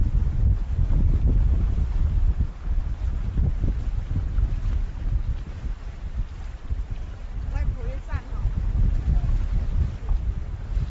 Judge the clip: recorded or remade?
recorded